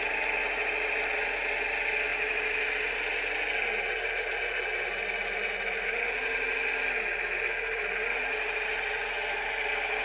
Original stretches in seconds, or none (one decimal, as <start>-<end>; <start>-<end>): 0.0-10.0